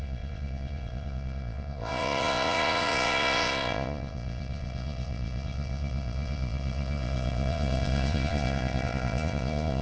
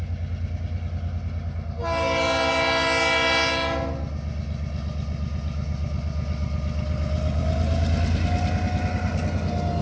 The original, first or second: second